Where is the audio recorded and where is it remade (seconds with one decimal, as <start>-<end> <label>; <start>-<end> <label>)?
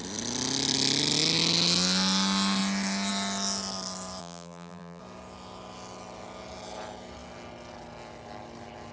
0.0-4.2 recorded; 4.2-5.0 remade; 5.0-8.9 recorded